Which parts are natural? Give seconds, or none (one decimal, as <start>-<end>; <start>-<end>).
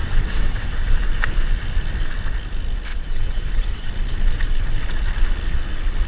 0.9-2.9; 3.9-6.1